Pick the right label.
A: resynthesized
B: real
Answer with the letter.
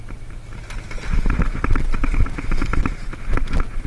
B